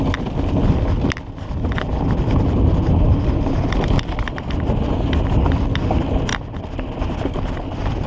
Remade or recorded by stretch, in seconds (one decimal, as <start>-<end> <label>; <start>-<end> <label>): 0.0-8.1 recorded